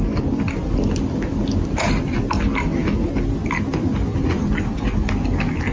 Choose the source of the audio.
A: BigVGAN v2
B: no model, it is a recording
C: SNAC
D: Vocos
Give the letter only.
B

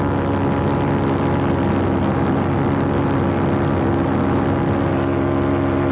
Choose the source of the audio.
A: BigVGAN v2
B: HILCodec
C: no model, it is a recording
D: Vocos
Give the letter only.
C